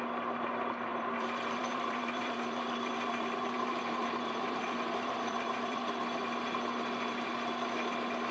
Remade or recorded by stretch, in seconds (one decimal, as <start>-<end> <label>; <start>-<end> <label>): 0.0-0.9 recorded; 0.9-5.9 remade; 5.9-8.3 recorded